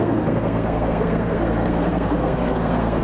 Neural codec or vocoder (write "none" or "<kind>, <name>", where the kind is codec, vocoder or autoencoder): codec, SNAC